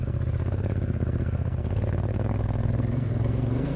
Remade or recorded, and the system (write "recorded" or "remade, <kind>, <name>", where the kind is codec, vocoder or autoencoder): remade, codec, SNAC